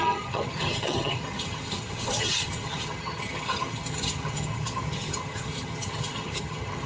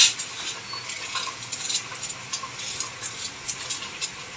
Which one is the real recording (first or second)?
second